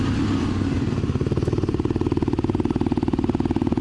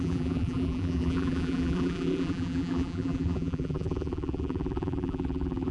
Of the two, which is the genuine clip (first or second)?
first